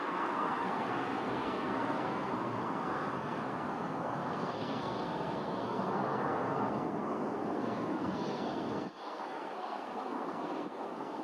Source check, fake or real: fake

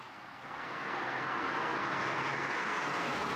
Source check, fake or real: fake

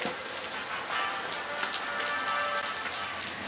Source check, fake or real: real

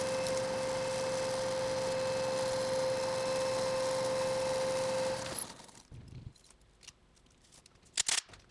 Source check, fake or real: real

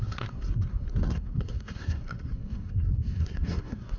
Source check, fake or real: fake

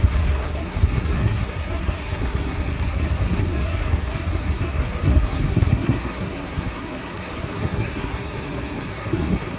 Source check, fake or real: fake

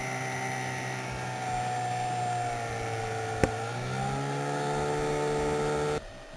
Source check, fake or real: real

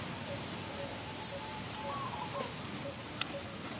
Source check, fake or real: real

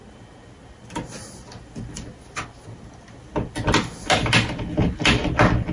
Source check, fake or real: real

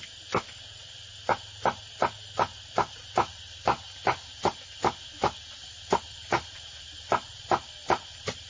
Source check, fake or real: real